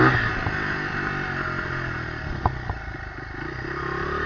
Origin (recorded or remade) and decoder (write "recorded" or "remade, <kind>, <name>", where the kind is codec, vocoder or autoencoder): recorded